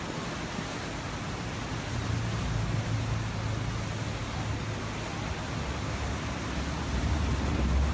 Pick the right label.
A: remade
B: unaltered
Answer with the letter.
B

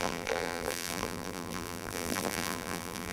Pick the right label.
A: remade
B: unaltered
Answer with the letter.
A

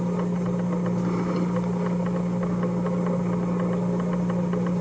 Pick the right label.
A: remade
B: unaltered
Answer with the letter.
B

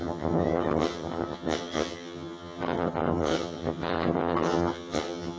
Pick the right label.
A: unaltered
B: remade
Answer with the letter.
B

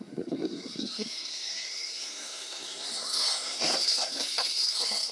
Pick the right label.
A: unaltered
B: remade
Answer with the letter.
B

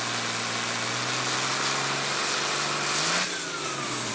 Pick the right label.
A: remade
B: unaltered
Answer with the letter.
B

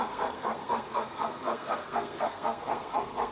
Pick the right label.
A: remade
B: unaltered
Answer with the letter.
A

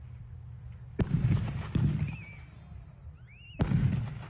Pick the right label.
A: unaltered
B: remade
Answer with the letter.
A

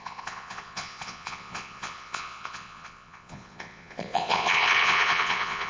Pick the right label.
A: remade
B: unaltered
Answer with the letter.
A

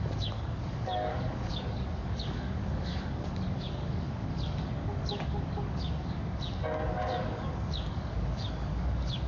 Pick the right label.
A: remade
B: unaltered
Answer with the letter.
A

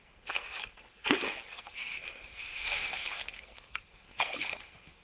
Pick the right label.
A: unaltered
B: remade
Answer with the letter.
B